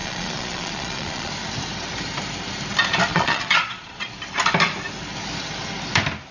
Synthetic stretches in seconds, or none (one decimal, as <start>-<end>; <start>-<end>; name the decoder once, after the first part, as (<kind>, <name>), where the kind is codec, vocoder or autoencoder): 0.0-1.3 (vocoder, Vocos); 3.1-4.1